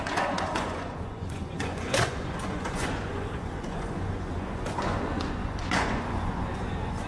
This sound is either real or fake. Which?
fake